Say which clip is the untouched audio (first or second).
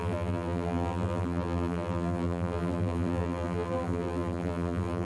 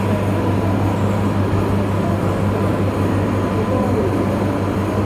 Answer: second